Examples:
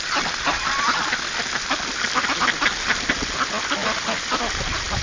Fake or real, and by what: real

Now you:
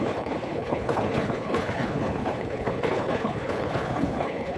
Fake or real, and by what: fake, codec, HILCodec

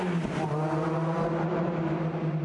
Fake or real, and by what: real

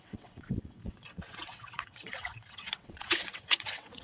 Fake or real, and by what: fake, vocoder, WaveNeXt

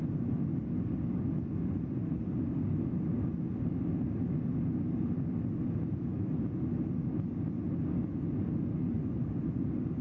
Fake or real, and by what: real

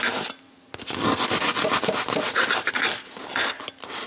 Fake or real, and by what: real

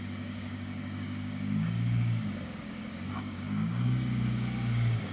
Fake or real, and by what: fake, codec, DAC